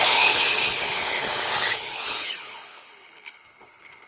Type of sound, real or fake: fake